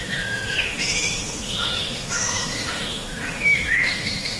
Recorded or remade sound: remade